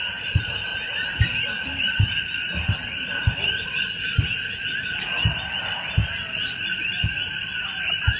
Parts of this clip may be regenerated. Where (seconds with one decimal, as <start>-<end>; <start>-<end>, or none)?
none